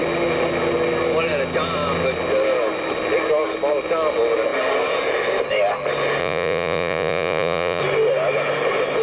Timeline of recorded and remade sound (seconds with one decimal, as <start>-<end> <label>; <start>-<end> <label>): 0.0-6.2 recorded; 6.2-7.8 remade; 7.8-9.0 recorded